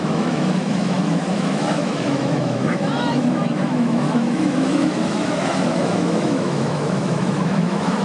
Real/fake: fake